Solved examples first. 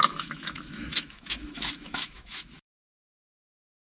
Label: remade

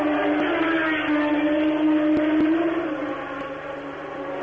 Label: recorded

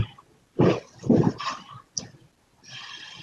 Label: recorded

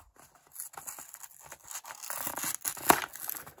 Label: recorded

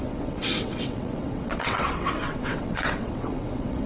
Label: remade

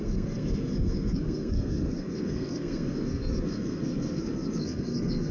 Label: remade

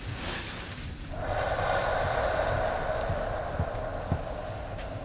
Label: recorded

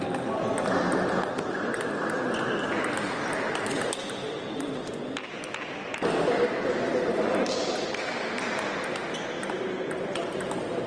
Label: recorded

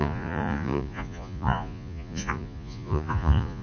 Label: remade